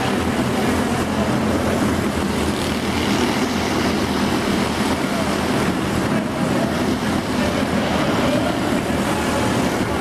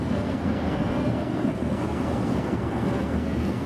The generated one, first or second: second